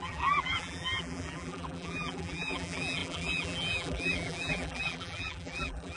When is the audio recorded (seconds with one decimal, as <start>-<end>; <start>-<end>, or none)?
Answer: none